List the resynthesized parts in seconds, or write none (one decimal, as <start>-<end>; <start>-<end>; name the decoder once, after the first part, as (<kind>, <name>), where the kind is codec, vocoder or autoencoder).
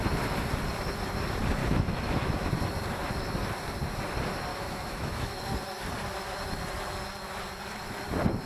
1.6-2.5 (autoencoder, DAC-VAE); 4.5-5.4